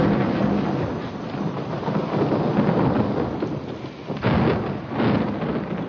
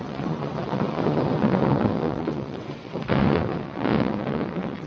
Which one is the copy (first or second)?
second